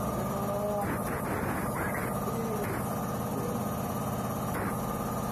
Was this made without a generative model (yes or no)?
yes